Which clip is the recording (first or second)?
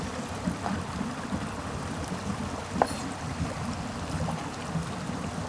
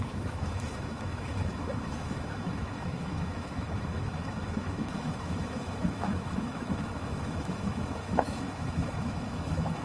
first